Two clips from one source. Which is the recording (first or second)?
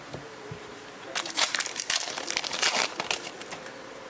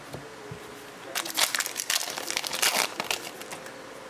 second